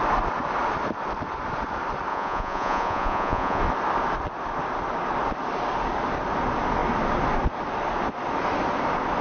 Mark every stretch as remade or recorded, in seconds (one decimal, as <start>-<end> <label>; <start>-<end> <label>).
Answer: 0.0-2.1 recorded; 2.1-3.6 remade; 3.6-9.2 recorded